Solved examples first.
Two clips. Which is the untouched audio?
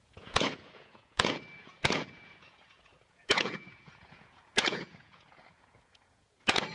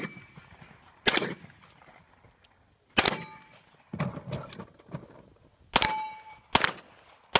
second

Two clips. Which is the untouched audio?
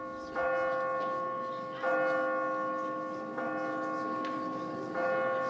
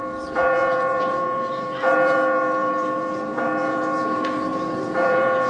first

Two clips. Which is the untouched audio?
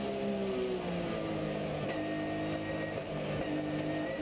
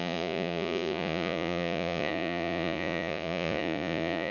first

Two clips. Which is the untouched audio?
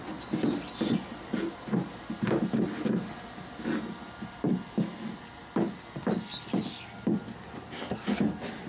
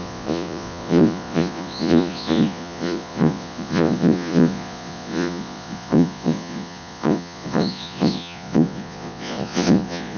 first